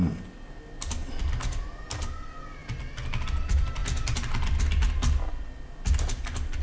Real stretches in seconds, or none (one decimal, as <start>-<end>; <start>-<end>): 0.0-6.6